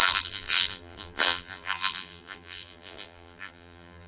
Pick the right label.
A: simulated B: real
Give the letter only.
A